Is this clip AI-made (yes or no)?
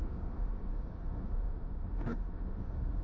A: yes